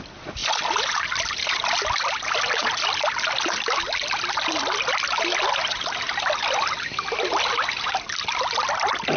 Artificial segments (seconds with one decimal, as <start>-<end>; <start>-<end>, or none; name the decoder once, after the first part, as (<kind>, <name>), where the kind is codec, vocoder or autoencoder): none